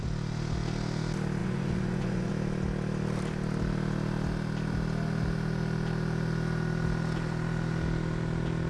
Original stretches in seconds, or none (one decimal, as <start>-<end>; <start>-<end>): 0.0-1.4; 2.3-8.7